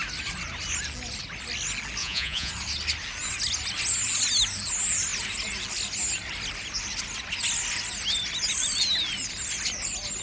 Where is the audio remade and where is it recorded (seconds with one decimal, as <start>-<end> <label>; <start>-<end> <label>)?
0.0-2.0 recorded; 2.0-2.5 remade; 2.5-10.2 recorded